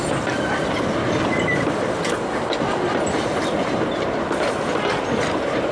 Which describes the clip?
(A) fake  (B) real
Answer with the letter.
B